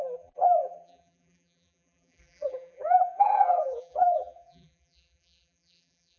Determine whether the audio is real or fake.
fake